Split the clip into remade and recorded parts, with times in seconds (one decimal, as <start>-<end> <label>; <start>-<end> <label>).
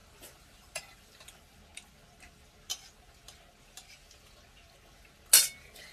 0.0-1.6 remade; 1.6-5.9 recorded